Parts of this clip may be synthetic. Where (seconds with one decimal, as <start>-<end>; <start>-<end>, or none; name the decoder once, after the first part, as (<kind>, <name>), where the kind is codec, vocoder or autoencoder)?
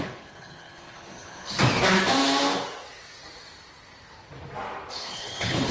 0.0-1.5 (codec, HILCodec); 4.9-5.7